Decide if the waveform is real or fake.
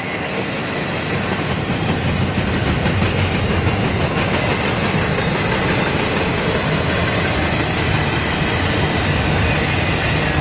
real